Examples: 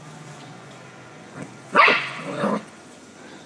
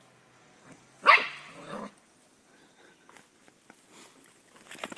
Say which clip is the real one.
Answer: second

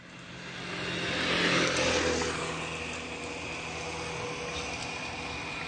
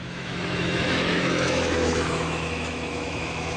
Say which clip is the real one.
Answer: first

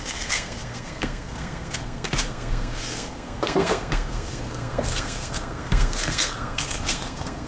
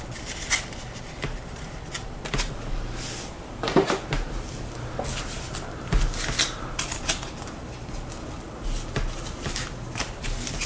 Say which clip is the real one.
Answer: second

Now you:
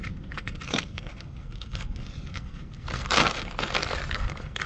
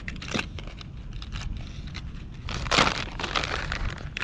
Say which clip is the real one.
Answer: second